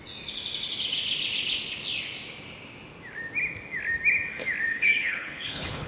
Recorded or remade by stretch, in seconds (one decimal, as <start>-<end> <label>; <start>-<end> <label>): 0.0-4.7 recorded; 4.7-5.9 remade